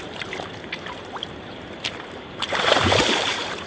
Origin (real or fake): fake